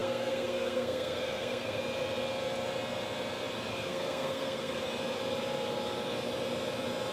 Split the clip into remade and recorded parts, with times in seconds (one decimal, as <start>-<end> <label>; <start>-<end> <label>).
0.0-1.8 remade; 1.8-3.7 recorded; 3.7-4.8 remade; 4.8-7.1 recorded